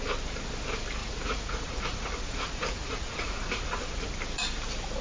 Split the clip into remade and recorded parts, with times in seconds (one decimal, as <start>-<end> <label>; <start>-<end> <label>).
0.0-1.0 recorded; 1.0-4.0 remade; 4.0-5.0 recorded